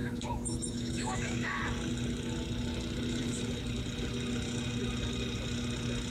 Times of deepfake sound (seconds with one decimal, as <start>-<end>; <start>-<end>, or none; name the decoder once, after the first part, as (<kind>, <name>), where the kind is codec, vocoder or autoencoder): 0.0-1.6 (autoencoder, DAC-VAE)